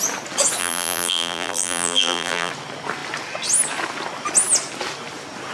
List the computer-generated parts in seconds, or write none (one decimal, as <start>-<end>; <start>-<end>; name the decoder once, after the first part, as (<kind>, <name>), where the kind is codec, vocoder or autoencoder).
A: 0.6-2.5 (vocoder, BigVGAN v2)